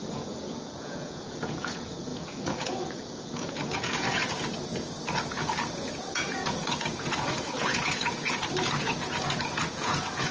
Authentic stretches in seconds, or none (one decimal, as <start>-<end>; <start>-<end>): 4.2-5.2